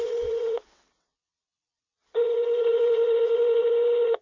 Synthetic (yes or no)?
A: yes